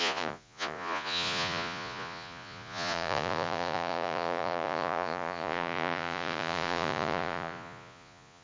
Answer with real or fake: fake